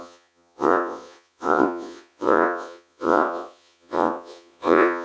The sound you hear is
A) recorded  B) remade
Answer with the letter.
B